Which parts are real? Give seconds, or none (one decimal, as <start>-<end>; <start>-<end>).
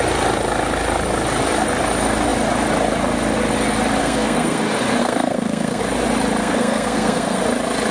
0.0-4.0; 4.6-5.0; 5.8-6.4; 7.4-7.9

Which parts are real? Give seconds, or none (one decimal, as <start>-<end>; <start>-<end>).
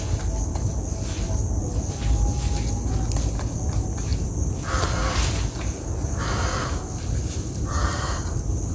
0.0-8.7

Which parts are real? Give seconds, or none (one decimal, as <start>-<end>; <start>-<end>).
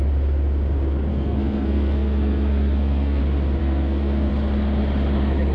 0.0-1.1; 3.2-3.6; 4.3-5.5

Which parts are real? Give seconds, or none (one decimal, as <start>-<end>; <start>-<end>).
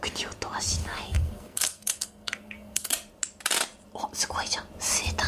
0.0-0.8; 2.9-5.3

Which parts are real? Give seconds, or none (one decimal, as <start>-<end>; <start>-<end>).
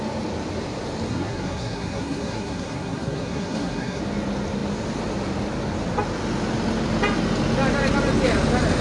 0.0-1.1; 4.0-8.8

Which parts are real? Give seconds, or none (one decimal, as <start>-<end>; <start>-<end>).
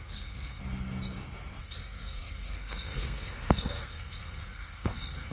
0.6-1.6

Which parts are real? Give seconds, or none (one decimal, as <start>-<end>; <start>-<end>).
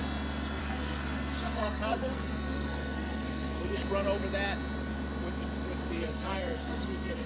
0.0-0.6; 3.8-5.9